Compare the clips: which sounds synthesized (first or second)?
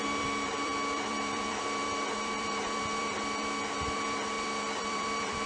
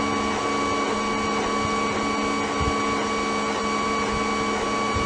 first